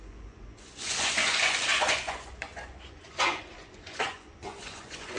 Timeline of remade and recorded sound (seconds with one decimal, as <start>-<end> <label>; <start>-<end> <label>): 0.0-5.2 remade